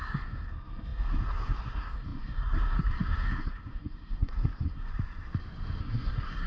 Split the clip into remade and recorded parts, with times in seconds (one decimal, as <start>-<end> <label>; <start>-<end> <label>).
0.0-4.9 remade; 4.9-5.8 recorded; 5.8-6.5 remade